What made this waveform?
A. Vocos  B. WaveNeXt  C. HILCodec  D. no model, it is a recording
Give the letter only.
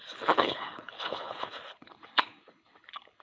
C